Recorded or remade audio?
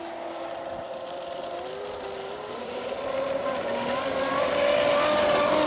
recorded